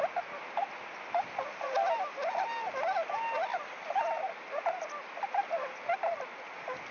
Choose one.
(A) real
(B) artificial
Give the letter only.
A